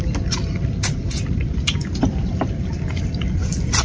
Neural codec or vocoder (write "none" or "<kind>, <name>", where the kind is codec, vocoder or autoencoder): none